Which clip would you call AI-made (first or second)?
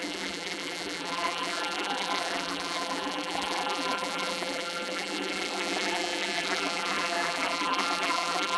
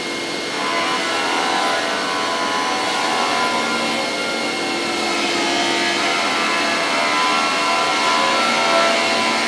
first